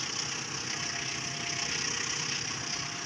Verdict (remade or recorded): recorded